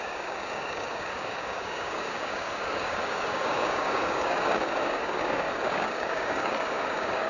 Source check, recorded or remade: remade